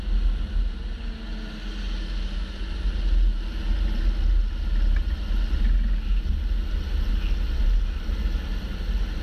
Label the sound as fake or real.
real